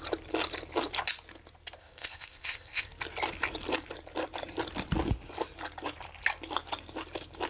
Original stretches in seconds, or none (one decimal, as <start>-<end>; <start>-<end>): 0.0-1.8; 2.9-7.5